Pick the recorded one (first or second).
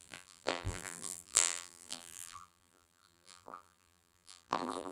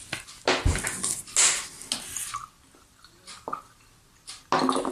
second